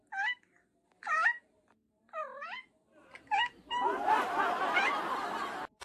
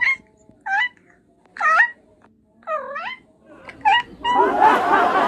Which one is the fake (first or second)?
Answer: first